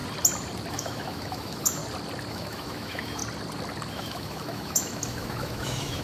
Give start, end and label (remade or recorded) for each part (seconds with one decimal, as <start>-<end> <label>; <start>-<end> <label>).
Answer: 0.0-0.7 recorded; 0.7-1.8 remade; 1.8-2.3 recorded; 2.3-3.2 remade; 3.2-3.9 recorded; 3.9-6.0 remade